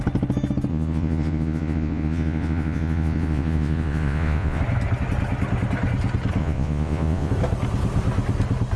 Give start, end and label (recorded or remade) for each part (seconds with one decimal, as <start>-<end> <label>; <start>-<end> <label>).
0.0-0.7 recorded; 0.7-4.6 remade; 4.6-6.4 recorded; 6.4-7.3 remade; 7.3-8.8 recorded